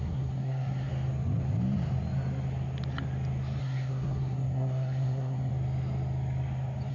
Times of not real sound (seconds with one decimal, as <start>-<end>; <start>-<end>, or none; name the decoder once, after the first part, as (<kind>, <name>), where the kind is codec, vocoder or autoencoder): 0.0-0.9 (codec, SNAC); 3.6-5.5